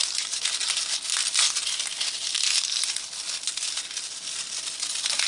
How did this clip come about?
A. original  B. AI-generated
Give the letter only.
A